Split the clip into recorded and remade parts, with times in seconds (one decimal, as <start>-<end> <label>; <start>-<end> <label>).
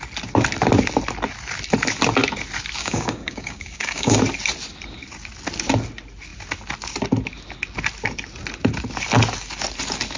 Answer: 0.0-2.8 recorded; 2.8-4.2 remade; 4.2-10.2 recorded